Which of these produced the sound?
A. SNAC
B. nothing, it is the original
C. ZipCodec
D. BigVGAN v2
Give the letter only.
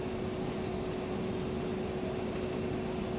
B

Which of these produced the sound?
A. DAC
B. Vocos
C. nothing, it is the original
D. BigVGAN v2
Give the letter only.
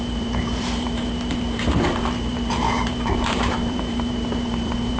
D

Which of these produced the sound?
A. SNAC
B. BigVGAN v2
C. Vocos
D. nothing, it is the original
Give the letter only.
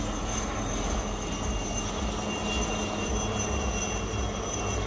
D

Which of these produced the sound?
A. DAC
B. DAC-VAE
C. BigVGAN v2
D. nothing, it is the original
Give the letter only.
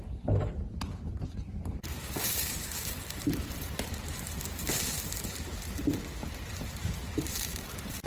C